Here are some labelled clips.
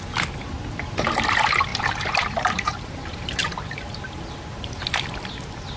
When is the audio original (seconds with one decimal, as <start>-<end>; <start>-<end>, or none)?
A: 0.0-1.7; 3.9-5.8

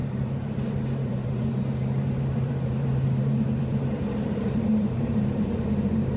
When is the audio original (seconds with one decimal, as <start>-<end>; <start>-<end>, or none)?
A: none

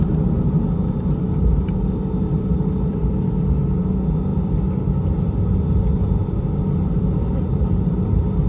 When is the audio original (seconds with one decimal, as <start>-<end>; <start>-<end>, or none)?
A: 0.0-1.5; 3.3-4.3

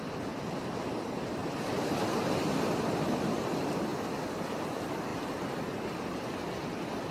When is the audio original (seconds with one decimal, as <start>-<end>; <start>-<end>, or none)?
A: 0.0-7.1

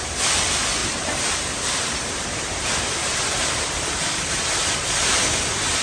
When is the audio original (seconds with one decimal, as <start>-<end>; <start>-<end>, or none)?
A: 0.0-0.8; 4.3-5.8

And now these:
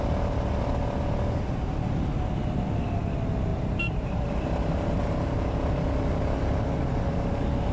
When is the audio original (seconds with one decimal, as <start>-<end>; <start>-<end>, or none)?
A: 0.0-7.7

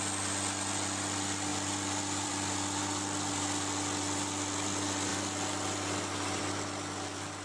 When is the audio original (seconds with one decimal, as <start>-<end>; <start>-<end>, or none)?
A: 0.0-1.5; 3.3-7.4

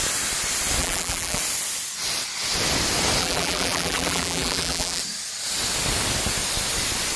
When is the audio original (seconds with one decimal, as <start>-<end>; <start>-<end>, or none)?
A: 0.0-0.8; 1.4-3.2; 5.0-7.2